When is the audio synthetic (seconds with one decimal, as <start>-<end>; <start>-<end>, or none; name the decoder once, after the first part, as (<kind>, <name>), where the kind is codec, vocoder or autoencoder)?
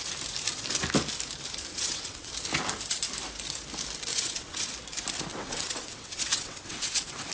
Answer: 1.7-2.3 (vocoder, WaveNeXt); 4.1-4.7; 5.3-7.3